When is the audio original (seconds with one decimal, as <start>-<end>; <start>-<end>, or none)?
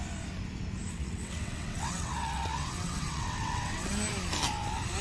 0.0-0.9; 3.9-5.0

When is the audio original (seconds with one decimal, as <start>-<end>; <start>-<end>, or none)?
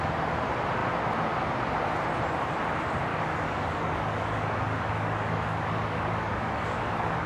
0.0-3.1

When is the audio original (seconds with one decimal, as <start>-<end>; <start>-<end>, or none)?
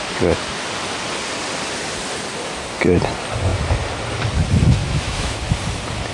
0.0-4.8; 5.4-6.1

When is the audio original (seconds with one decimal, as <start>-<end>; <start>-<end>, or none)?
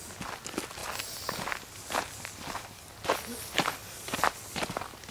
0.0-5.1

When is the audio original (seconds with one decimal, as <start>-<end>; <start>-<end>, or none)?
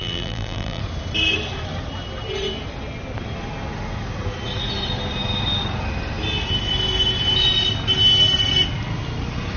0.8-9.6